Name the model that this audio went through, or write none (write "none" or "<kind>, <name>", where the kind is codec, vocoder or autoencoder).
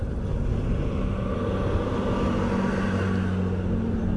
none